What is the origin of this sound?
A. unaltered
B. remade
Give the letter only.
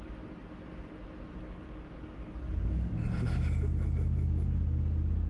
A